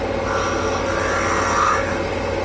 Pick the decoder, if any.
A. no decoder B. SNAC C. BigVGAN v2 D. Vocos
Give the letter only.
A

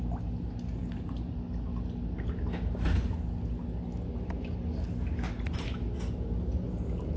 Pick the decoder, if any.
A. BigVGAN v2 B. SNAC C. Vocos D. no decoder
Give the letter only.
D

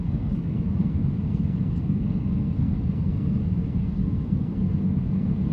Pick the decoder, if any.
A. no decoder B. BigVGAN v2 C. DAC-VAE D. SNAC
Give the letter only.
D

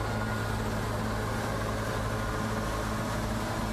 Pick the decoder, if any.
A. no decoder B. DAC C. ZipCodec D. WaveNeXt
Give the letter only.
A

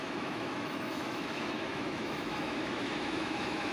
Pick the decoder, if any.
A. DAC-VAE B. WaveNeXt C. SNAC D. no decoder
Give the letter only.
A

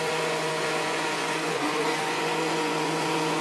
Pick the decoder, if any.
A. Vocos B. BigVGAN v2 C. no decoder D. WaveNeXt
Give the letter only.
A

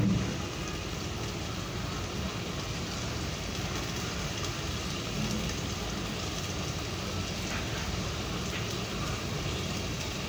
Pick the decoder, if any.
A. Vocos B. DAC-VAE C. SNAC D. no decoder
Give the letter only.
D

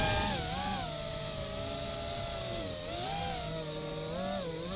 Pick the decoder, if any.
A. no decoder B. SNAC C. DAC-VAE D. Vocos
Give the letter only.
A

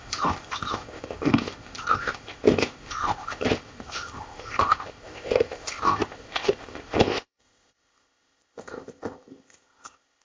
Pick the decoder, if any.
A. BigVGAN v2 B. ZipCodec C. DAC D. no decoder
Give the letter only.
B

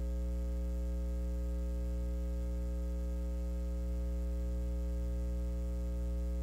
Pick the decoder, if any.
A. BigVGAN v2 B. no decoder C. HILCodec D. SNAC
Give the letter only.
B